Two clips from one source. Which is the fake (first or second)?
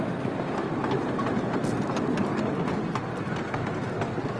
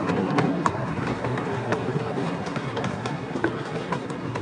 second